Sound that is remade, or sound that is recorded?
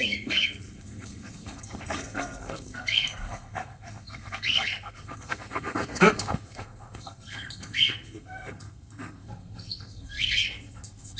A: remade